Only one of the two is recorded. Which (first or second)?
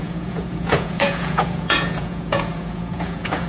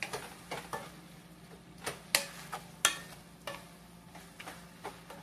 second